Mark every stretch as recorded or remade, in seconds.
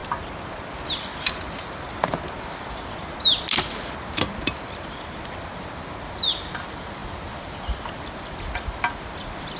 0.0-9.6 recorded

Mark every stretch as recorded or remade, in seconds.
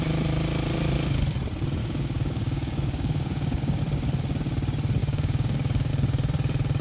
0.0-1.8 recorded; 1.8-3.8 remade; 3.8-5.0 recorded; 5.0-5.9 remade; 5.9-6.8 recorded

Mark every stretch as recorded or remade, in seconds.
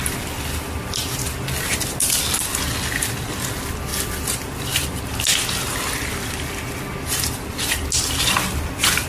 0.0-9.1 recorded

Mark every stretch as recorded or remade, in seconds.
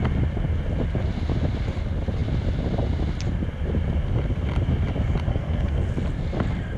0.0-5.3 recorded; 5.3-5.9 remade; 5.9-6.8 recorded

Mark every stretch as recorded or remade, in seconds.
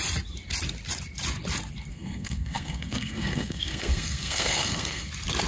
0.0-1.9 recorded; 1.9-5.1 remade; 5.1-5.5 recorded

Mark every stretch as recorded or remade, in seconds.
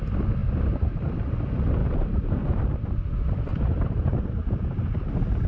0.0-0.4 recorded; 0.4-1.1 remade; 1.1-1.8 recorded; 1.8-2.6 remade; 2.6-3.5 recorded; 3.5-5.5 remade